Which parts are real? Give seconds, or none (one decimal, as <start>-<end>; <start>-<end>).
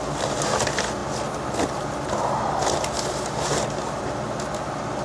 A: 0.0-5.0